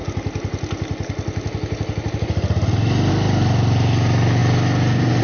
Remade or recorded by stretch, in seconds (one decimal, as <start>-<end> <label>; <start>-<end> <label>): 0.0-5.2 recorded